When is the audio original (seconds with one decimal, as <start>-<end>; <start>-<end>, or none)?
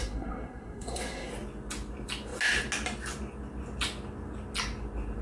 1.3-5.2